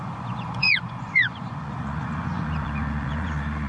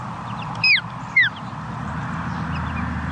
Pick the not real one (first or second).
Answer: first